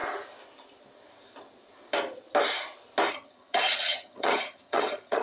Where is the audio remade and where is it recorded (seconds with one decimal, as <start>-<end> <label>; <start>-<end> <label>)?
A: 0.0-3.1 recorded; 3.1-5.2 remade